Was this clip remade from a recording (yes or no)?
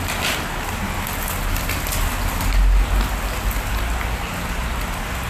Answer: no